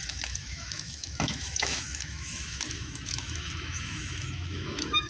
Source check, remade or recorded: remade